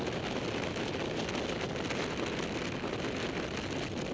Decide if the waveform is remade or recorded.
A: recorded